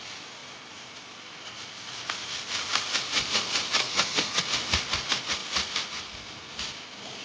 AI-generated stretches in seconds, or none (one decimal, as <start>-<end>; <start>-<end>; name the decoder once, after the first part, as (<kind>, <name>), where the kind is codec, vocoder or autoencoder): 3.8-4.4 (codec, SNAC)